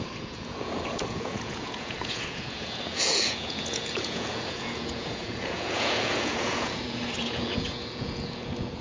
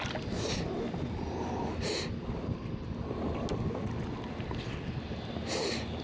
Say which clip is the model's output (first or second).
first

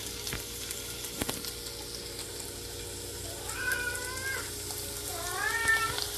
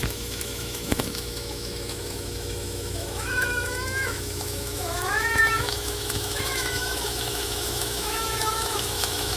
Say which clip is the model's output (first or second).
second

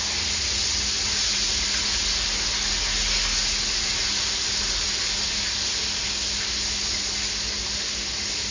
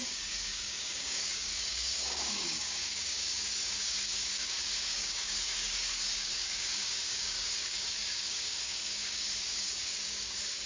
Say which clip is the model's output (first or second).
second